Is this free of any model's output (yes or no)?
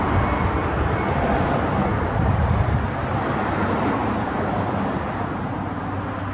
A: yes